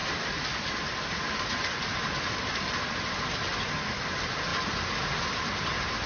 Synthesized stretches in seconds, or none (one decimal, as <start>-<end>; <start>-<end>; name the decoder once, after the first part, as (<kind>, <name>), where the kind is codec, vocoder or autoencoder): none